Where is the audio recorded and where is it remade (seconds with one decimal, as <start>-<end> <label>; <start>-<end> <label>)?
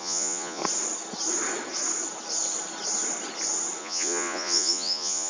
0.0-0.6 remade; 0.6-3.8 recorded; 3.8-5.3 remade